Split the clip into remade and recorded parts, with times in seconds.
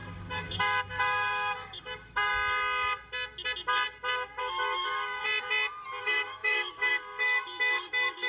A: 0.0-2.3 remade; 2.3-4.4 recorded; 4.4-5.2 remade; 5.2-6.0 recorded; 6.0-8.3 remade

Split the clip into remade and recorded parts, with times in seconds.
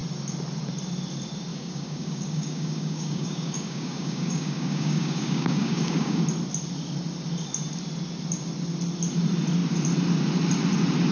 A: 0.0-1.5 recorded; 1.5-6.2 remade; 6.2-11.1 recorded